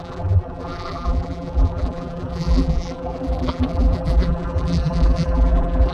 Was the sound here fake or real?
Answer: fake